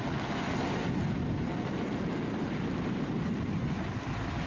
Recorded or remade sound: recorded